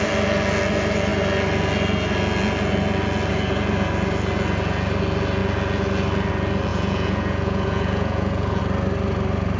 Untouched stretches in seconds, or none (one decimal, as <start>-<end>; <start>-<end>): 0.0-6.7; 8.6-9.6